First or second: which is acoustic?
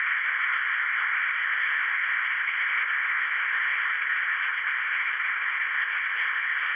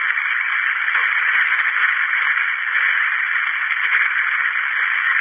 second